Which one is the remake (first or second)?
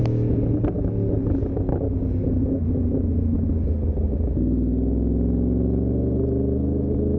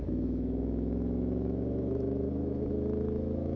second